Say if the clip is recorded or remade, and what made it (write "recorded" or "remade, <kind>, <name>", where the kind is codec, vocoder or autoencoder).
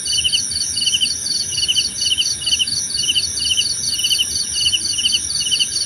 recorded